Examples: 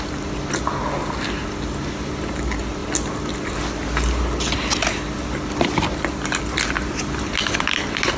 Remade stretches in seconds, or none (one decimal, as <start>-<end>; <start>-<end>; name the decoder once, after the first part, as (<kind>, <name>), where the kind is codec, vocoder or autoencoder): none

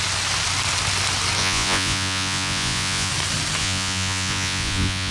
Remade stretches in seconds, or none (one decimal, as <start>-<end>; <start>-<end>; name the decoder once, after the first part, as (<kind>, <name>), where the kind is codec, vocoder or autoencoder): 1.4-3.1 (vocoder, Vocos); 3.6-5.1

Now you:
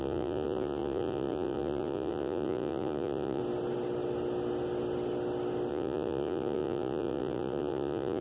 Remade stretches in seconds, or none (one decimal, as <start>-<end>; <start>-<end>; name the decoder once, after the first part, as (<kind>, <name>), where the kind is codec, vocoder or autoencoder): 0.0-3.4 (vocoder, Vocos); 5.7-8.2